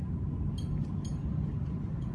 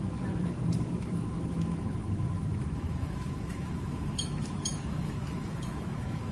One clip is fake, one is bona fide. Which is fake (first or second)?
second